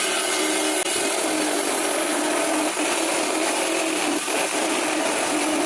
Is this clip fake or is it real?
real